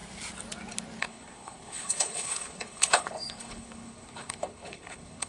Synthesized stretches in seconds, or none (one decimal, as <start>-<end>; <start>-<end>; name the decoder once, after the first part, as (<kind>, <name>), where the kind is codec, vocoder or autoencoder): 1.0-5.3 (codec, HILCodec)